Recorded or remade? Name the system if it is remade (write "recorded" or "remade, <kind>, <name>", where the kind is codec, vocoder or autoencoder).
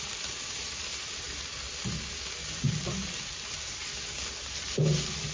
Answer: recorded